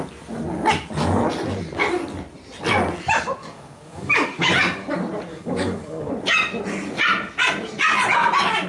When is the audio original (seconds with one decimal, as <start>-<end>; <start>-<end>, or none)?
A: 0.0-3.4; 4.5-5.3; 6.1-8.7